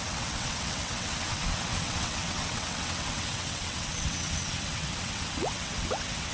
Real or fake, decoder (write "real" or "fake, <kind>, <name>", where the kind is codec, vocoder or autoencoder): fake, vocoder, WaveNeXt